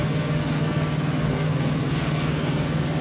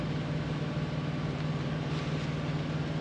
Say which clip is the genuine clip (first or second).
second